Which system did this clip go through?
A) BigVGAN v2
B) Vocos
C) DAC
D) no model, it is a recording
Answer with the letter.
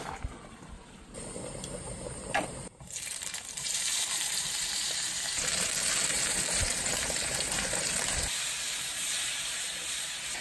A